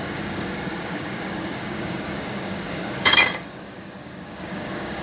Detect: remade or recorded remade